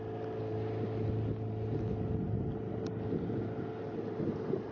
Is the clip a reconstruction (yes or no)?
no